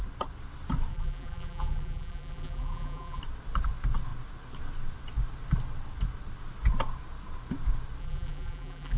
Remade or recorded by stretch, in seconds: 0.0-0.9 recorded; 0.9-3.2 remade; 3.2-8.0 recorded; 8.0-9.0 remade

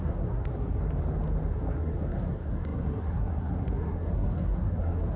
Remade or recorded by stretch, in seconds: 0.0-0.8 remade; 0.8-1.5 recorded; 1.5-5.2 remade

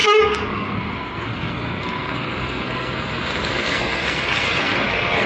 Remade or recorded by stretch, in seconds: 0.0-5.3 remade

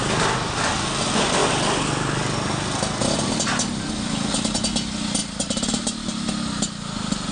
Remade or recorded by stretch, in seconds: 0.0-5.2 recorded; 5.2-6.3 remade; 6.3-7.3 recorded

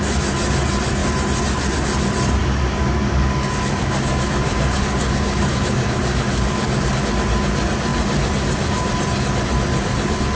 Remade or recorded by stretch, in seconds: 0.0-2.4 recorded; 2.4-7.0 remade; 7.0-10.3 recorded

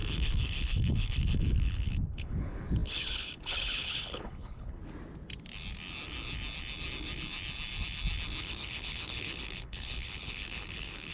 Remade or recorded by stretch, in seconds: 0.0-4.8 remade; 4.8-8.4 recorded; 8.4-11.1 remade

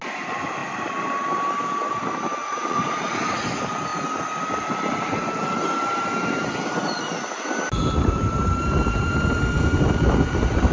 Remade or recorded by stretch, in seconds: 0.0-2.4 recorded; 2.4-3.1 remade; 3.1-10.7 recorded

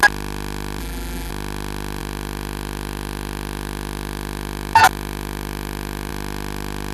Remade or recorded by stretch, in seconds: 0.0-0.8 recorded; 0.8-1.3 remade; 1.3-6.9 recorded